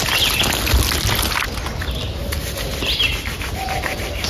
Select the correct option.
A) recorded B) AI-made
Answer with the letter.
A